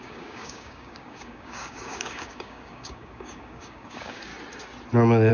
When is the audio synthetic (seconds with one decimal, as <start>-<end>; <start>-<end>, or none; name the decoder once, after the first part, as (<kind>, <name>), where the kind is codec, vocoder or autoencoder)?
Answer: 0.0-4.3 (codec, DAC)